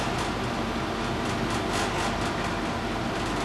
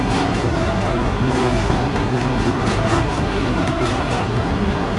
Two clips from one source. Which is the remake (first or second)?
second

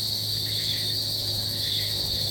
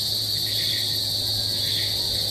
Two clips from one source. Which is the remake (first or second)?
first